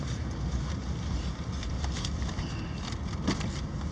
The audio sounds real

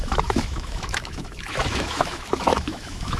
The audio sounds fake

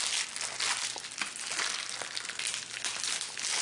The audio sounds real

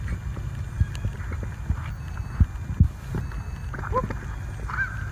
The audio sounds real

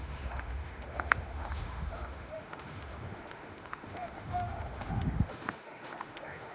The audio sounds fake